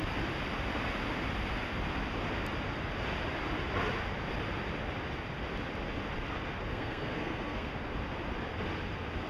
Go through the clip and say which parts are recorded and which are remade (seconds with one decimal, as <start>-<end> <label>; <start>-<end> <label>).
0.0-6.7 recorded; 6.7-7.7 remade; 7.7-9.3 recorded